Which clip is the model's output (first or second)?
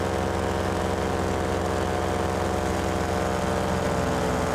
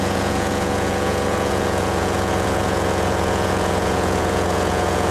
second